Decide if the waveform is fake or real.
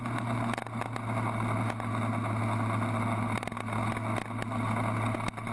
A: real